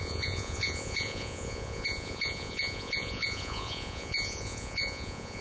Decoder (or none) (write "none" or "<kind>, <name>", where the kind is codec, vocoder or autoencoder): vocoder, Vocos